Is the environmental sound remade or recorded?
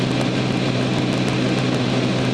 recorded